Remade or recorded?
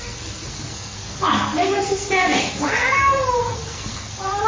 remade